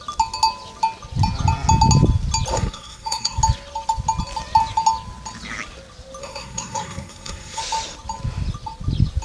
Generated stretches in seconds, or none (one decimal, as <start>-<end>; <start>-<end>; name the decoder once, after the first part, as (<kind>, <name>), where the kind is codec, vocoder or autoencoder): 2.5-3.4 (codec, SNAC); 6.2-7.6